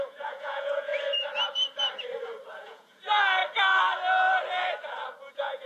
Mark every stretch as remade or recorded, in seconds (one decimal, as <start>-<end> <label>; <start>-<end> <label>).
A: 0.0-0.9 remade; 0.9-2.5 recorded; 2.5-3.4 remade; 3.4-5.3 recorded; 5.3-5.7 remade